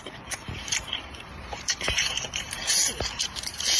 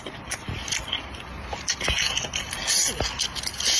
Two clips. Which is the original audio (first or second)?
second